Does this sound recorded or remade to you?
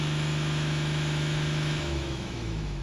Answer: remade